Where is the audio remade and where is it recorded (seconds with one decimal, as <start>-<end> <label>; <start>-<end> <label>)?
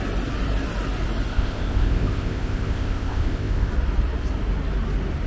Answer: 0.0-1.3 recorded; 1.3-3.7 remade; 3.7-5.3 recorded